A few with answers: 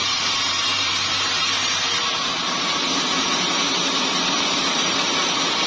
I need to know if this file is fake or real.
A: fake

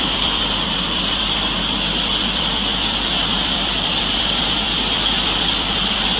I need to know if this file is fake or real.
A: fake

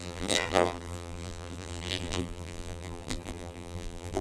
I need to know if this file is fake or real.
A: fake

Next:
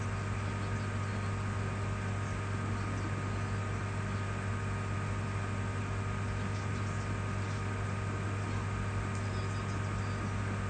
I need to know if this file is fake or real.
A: real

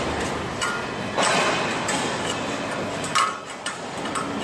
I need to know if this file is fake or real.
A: real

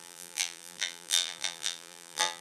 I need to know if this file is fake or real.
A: fake